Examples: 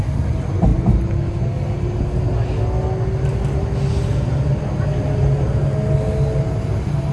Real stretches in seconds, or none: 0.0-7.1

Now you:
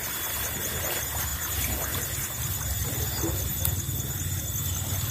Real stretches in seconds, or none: 0.0-5.1

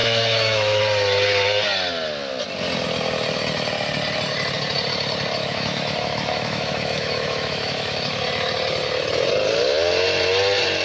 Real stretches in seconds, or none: 0.8-5.4; 8.2-10.8